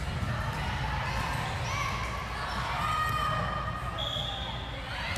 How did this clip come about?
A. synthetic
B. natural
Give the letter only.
B